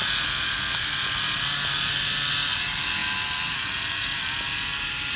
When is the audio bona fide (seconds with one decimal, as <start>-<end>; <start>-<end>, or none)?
0.0-5.2